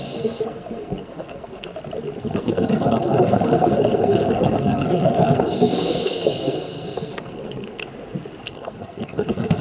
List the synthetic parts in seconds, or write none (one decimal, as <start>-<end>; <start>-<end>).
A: 0.0-1.7; 2.2-7.8; 8.5-9.6